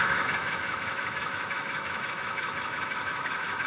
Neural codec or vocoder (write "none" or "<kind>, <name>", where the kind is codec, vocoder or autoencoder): autoencoder, DAC-VAE